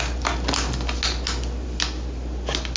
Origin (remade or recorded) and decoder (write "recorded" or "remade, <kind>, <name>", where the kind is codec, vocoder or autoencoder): recorded